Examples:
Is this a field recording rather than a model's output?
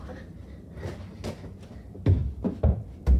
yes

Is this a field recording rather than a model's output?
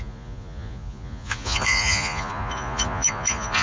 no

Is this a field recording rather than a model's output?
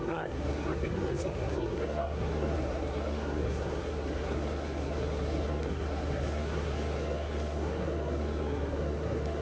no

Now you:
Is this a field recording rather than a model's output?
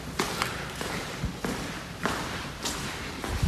yes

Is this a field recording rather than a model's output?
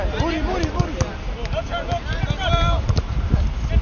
yes